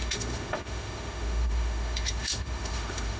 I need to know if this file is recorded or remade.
remade